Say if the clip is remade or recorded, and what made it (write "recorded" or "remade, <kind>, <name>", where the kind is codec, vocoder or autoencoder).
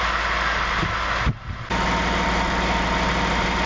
recorded